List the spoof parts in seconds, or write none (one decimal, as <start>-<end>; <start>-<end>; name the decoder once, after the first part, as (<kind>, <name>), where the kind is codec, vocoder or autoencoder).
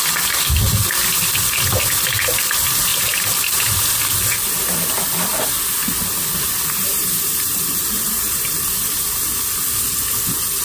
2.9-3.6 (vocoder, BigVGAN v2); 6.8-8.5